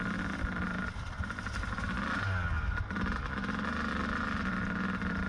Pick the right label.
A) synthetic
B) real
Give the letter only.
B